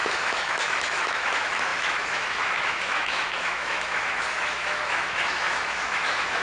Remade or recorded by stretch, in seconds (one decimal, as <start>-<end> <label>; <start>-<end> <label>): 0.0-6.4 remade